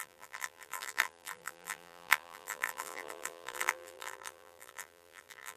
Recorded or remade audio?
remade